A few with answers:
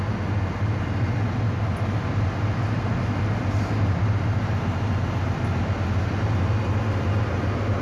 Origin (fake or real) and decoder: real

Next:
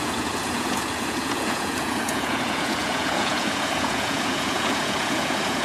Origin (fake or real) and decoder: fake, vocoder, Vocos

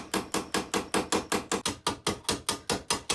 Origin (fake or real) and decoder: real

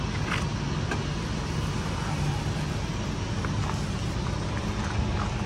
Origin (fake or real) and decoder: real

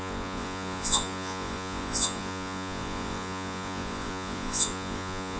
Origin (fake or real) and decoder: fake, vocoder, Vocos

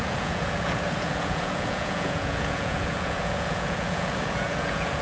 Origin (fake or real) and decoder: fake, vocoder, Vocos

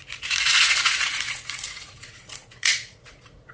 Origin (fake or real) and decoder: fake, vocoder, Vocos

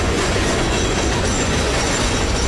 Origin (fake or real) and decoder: fake, vocoder, Vocos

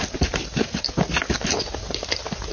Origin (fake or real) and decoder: real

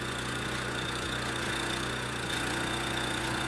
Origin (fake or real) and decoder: fake, vocoder, Vocos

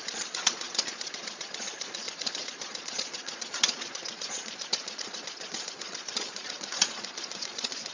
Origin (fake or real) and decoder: fake, vocoder, Vocos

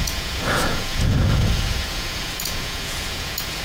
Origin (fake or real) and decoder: fake, vocoder, Vocos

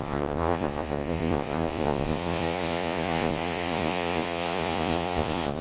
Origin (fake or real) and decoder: fake, vocoder, Vocos